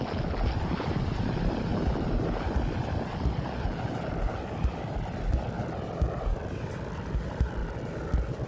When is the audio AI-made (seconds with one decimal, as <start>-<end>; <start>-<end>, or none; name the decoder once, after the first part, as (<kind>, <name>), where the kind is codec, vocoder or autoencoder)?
none